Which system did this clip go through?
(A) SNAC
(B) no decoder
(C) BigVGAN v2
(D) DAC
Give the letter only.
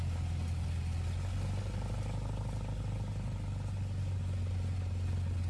B